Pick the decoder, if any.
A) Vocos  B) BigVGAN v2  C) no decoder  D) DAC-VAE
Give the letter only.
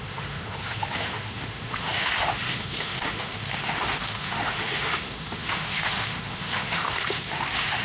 D